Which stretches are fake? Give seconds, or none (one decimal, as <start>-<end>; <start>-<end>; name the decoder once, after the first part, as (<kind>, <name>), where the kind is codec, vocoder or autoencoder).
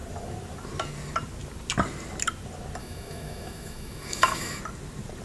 2.8-4.6 (autoencoder, DAC-VAE)